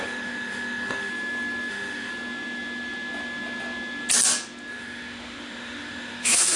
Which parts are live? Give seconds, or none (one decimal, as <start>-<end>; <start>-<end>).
1.1-1.7; 2.1-4.7